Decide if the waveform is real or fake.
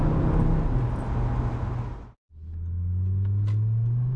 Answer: real